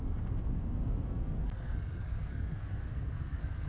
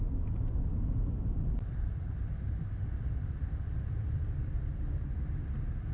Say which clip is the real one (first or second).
second